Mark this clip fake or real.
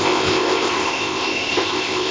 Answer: fake